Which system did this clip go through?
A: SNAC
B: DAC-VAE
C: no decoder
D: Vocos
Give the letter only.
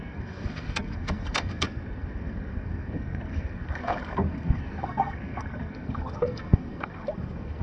A